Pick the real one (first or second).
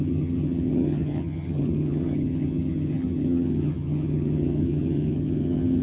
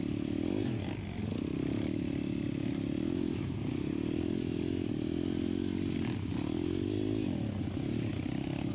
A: second